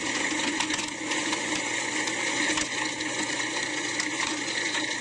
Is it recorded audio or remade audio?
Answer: remade